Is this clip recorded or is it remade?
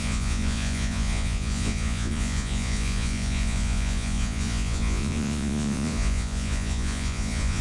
remade